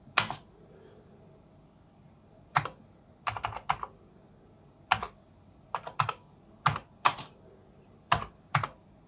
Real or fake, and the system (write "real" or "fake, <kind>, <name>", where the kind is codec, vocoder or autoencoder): real